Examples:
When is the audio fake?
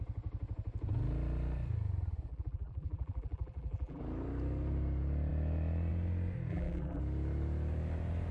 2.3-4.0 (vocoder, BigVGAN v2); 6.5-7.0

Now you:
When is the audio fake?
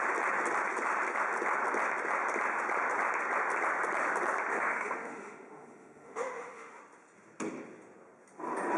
4.5-6.8 (autoencoder, DAC-VAE)